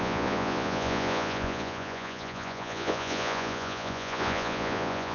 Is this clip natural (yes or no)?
no